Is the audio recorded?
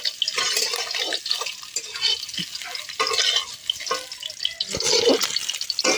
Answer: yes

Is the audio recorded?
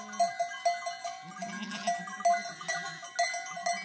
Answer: yes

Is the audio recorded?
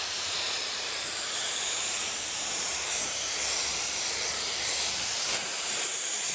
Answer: no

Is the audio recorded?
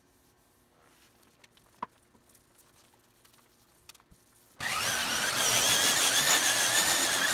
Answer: yes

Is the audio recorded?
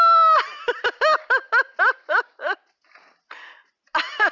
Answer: yes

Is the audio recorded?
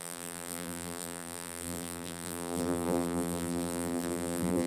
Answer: no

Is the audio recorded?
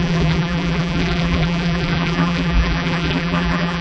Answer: no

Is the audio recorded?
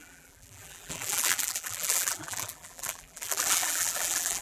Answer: no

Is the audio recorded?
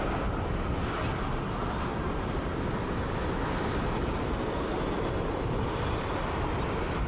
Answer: yes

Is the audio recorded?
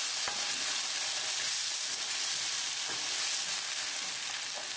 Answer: yes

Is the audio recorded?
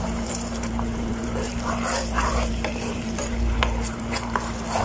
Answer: no